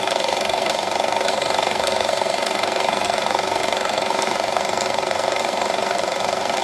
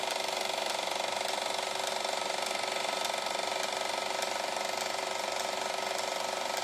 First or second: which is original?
second